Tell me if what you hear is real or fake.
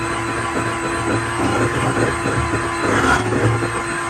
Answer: real